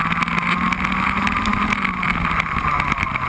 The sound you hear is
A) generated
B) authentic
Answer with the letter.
B